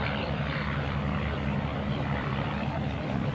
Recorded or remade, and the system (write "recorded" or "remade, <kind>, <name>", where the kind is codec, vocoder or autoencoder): remade, vocoder, BigVGAN v2